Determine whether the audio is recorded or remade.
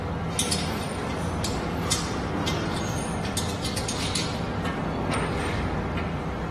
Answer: recorded